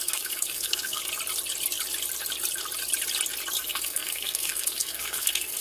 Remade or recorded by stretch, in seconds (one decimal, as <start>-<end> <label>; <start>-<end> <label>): 0.0-1.0 remade; 1.0-3.6 recorded; 3.6-5.6 remade